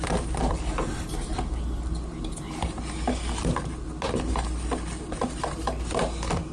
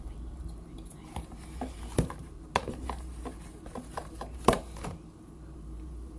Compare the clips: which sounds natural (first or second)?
first